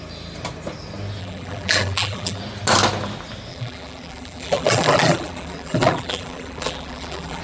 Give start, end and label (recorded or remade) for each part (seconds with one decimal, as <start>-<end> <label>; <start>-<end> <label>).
0.0-1.2 recorded; 1.2-2.4 remade; 2.4-3.5 recorded; 3.5-7.4 remade